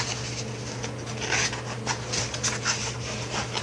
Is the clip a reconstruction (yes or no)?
no